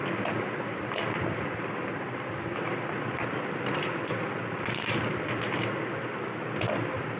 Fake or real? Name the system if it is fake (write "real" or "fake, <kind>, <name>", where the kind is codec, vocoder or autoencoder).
real